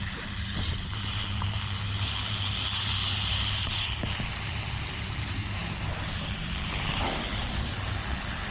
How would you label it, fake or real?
fake